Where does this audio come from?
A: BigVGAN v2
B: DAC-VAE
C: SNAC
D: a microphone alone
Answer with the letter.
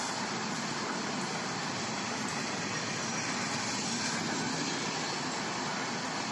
D